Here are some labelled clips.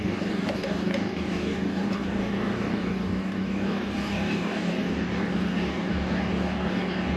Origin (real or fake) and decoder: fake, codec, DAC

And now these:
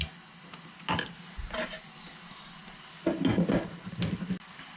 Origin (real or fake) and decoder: real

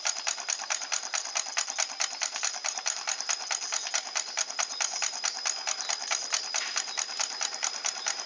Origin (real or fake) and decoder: real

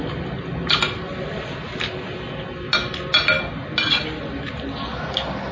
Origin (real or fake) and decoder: real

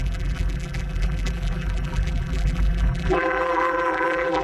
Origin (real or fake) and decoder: fake, vocoder, BigVGAN v2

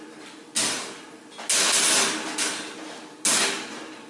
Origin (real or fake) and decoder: real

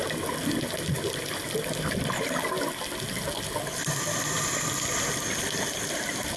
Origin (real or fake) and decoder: real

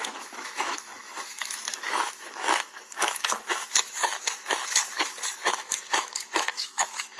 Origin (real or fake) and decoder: fake, autoencoder, DAC-VAE